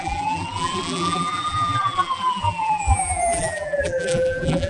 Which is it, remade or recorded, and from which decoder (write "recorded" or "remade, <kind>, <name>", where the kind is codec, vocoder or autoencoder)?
remade, vocoder, BigVGAN v2